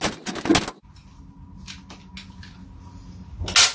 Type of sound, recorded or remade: recorded